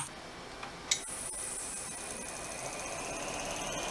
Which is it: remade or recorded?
recorded